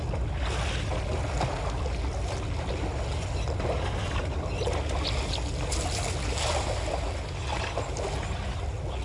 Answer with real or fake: real